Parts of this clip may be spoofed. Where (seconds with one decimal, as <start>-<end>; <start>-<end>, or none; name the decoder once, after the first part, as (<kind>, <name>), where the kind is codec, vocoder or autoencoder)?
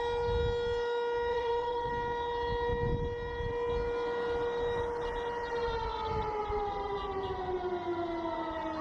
1.3-1.9 (vocoder, WaveNeXt)